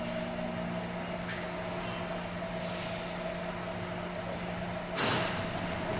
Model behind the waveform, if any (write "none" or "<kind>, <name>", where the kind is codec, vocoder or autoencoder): none